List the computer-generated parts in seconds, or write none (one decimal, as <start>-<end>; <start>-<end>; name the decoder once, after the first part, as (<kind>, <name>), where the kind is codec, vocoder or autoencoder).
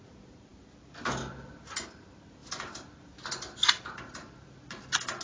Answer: none